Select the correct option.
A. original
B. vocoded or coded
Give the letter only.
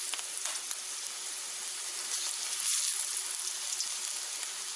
A